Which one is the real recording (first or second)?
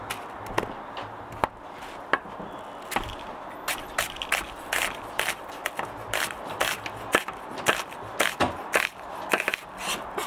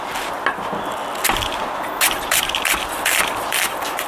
first